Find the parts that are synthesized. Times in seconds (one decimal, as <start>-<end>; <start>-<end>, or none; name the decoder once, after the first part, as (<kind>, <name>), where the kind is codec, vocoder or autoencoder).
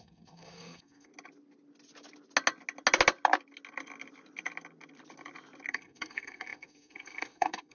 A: 0.0-1.1 (codec, SNAC); 5.7-7.7